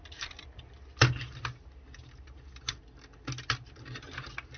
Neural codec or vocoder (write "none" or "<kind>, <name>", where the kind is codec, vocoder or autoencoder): none